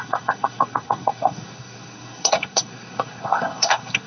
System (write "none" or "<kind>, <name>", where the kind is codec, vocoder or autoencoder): codec, SNAC